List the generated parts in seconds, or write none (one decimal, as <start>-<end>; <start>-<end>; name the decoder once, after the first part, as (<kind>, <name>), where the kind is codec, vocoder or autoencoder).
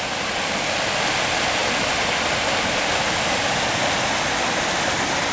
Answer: none